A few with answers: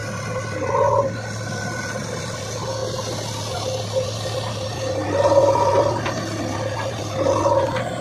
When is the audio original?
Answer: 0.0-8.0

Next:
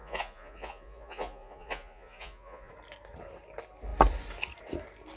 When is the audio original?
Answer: 2.7-5.2

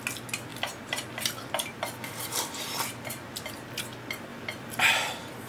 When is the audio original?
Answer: 0.0-0.5; 3.8-4.3; 4.9-5.5

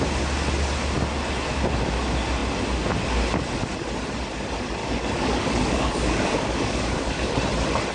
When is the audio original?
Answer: 0.0-4.8; 7.3-7.9

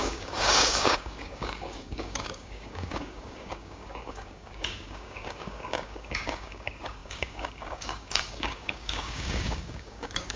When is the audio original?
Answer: none

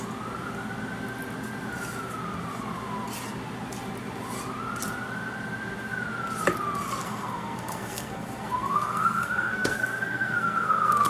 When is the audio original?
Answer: 0.0-7.0

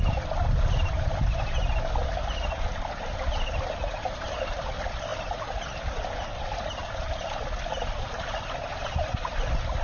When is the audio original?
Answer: 0.0-9.8